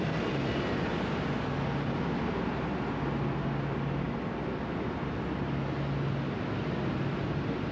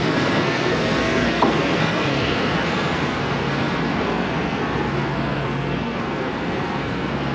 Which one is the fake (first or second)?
second